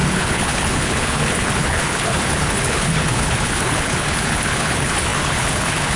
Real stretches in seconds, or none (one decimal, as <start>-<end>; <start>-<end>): none